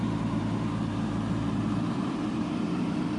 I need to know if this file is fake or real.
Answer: fake